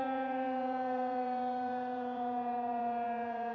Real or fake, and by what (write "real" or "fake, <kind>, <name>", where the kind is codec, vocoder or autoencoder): fake, vocoder, Vocos